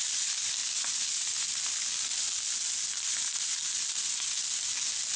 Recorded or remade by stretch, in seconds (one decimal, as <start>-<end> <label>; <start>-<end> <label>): 0.0-5.2 recorded